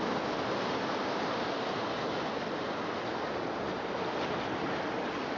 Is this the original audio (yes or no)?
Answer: yes